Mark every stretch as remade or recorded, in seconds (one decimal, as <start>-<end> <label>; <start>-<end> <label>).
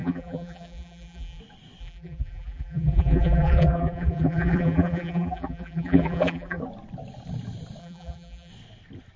0.0-1.4 remade; 1.4-1.8 recorded; 1.8-6.6 remade; 6.6-7.8 recorded; 7.8-8.5 remade; 8.5-9.2 recorded